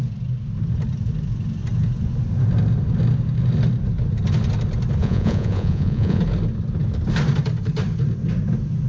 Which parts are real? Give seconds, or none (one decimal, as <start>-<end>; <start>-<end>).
0.0-5.0; 6.2-8.9